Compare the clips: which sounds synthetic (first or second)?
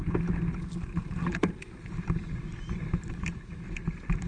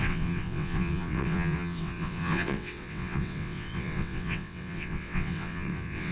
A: second